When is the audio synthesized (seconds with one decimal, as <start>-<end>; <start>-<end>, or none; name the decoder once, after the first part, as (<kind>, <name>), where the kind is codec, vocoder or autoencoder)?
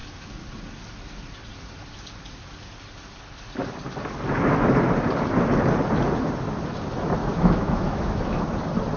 7.2-8.4 (autoencoder, DAC-VAE)